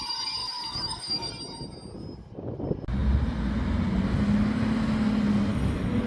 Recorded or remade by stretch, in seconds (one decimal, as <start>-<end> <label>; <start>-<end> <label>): 0.0-0.4 recorded; 0.4-1.3 remade; 1.3-5.5 recorded; 5.5-6.1 remade

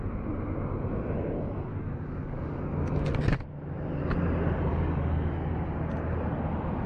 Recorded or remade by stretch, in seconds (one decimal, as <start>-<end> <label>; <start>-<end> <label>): 0.0-1.7 recorded; 1.7-3.1 remade; 3.1-4.7 recorded; 4.7-5.5 remade; 5.5-6.9 recorded